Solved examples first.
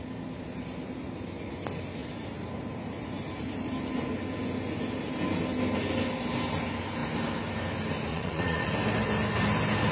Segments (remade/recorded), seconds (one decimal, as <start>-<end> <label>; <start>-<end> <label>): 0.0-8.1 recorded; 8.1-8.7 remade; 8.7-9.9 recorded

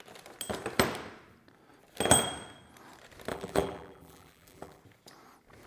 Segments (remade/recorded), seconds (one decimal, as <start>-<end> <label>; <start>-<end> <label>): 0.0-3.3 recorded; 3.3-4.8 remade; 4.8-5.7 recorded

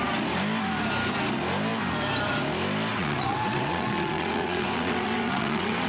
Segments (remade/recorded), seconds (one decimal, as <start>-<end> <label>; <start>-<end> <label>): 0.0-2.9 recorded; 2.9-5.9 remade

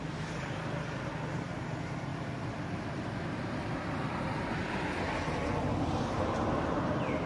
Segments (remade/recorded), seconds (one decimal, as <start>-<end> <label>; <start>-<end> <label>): 0.0-2.1 remade; 2.1-6.3 recorded; 6.3-7.3 remade

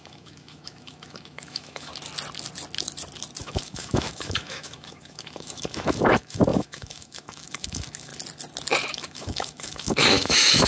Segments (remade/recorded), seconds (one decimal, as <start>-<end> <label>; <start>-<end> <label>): 0.0-1.9 remade; 1.9-3.4 recorded; 3.4-8.1 remade; 8.1-8.9 recorded; 8.9-10.7 remade

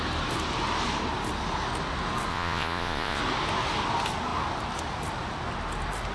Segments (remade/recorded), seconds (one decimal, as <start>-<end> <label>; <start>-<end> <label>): 0.0-2.3 recorded; 2.3-3.2 remade; 3.2-6.1 recorded

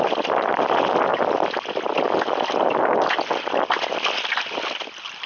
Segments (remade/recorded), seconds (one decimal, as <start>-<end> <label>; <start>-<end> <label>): 0.0-5.3 recorded